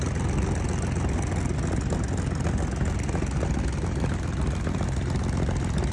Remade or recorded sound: recorded